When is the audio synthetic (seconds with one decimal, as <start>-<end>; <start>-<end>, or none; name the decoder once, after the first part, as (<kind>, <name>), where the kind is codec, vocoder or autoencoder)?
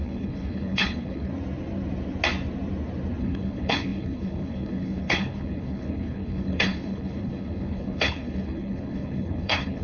0.0-1.3 (codec, HILCodec); 3.2-9.8